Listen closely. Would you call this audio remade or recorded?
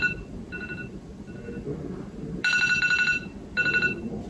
recorded